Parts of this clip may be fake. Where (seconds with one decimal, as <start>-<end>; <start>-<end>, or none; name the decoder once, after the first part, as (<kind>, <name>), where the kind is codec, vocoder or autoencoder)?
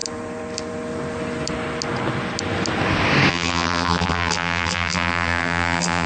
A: 3.3-6.1 (vocoder, BigVGAN v2)